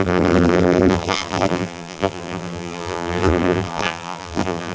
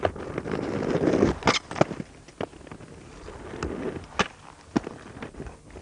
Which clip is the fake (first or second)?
first